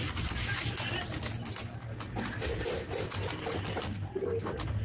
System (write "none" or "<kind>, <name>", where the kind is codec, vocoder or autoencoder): none